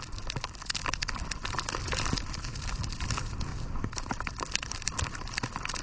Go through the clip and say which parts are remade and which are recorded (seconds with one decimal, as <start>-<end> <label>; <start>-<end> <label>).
0.0-1.8 recorded; 1.8-2.3 remade; 2.3-3.5 recorded; 3.5-4.5 remade; 4.5-5.8 recorded